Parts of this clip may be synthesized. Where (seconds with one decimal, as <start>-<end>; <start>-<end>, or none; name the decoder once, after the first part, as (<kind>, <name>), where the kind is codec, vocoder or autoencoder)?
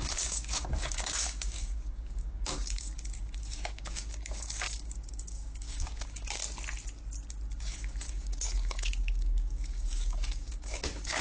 0.0-6.4 (codec, DAC); 7.6-11.2